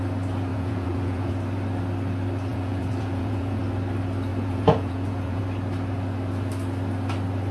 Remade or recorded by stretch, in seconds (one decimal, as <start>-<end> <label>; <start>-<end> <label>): 0.0-0.5 recorded; 0.5-1.3 remade; 1.3-2.5 recorded; 2.5-3.6 remade; 3.6-4.3 recorded; 4.3-5.4 remade; 5.4-7.5 recorded

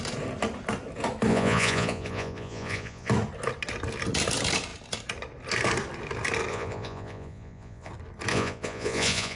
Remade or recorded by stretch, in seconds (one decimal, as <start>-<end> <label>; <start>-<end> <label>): 0.0-1.3 recorded; 1.3-3.1 remade; 3.1-6.5 recorded; 6.5-7.9 remade; 7.9-8.3 recorded; 8.3-9.4 remade

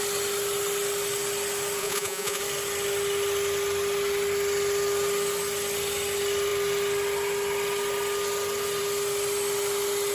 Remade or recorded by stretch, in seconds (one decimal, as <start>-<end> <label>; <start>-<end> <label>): 0.0-1.8 recorded; 1.8-2.4 remade; 2.4-10.1 recorded

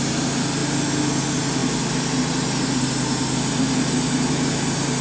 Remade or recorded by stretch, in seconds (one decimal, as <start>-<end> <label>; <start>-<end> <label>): 0.0-5.0 recorded

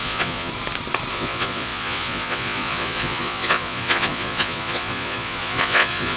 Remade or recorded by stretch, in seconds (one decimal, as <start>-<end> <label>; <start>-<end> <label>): 0.0-0.5 remade; 0.5-1.1 recorded; 1.1-6.2 remade